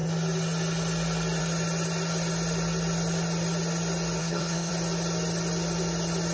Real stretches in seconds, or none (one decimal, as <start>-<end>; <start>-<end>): 0.0-4.2; 4.7-6.3